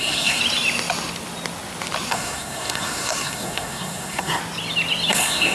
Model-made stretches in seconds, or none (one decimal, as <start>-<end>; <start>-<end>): 0.0-0.4; 2.1-4.4; 5.1-5.5